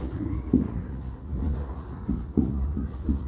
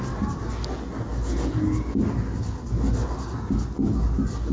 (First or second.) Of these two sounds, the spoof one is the first